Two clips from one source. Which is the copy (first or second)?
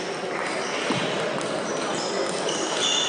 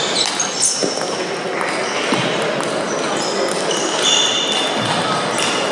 first